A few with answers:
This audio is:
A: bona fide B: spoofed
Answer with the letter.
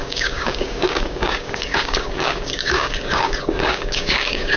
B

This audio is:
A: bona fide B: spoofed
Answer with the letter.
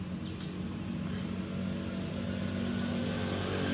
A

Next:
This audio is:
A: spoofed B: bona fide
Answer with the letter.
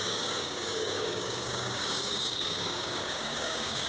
A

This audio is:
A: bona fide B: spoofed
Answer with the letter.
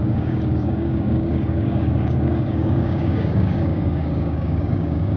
B